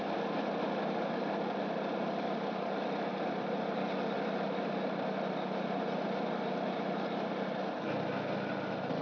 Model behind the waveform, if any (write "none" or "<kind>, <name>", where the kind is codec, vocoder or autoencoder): none